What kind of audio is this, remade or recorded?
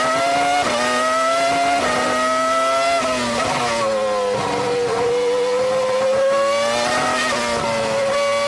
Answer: recorded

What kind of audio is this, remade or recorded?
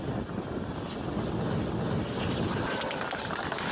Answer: recorded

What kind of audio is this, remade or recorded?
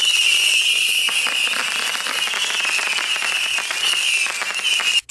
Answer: recorded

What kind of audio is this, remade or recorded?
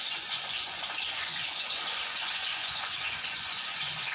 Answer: remade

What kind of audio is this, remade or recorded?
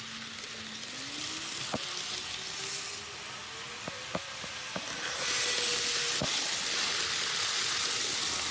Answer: recorded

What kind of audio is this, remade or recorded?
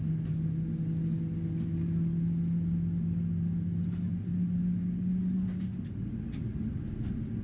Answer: recorded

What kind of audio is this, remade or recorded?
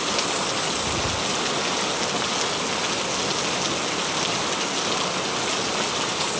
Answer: recorded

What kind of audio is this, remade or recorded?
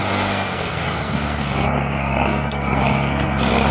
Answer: remade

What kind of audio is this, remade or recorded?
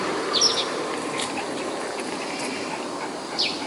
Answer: recorded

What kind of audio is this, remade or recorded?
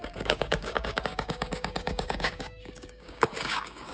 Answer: remade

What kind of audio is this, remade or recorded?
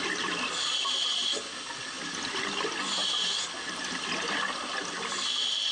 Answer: recorded